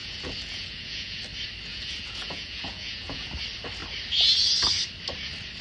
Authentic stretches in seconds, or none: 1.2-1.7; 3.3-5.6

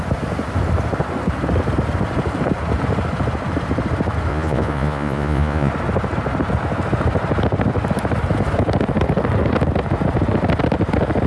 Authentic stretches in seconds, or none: 0.0-4.3; 5.7-11.3

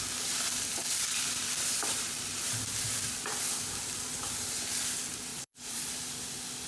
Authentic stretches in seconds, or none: 0.0-5.3; 5.9-6.7

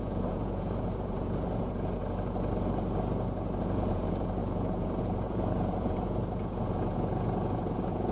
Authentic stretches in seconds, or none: 2.0-3.6

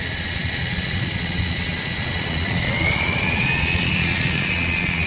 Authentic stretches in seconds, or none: none

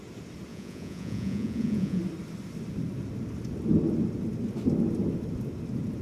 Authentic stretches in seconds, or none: 0.0-0.5; 2.0-6.0